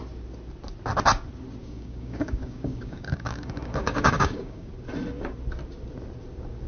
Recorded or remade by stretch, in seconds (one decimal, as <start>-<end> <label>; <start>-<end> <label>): 0.0-1.6 recorded; 1.6-4.7 remade; 4.7-6.7 recorded